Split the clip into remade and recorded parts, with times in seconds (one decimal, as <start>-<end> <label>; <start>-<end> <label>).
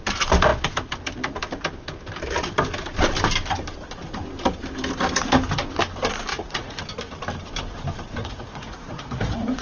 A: 0.0-6.3 recorded; 6.3-6.8 remade; 6.8-8.2 recorded; 8.2-9.6 remade